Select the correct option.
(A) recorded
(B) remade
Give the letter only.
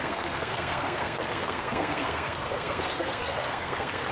B